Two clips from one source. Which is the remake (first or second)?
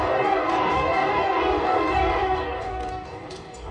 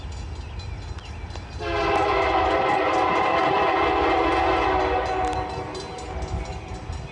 first